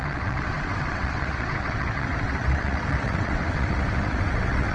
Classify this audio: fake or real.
fake